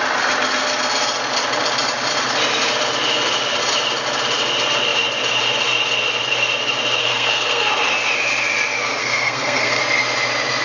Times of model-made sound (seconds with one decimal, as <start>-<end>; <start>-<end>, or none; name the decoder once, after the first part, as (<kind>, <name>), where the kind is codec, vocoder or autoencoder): 7.0-7.7 (codec, SNAC); 9.0-9.8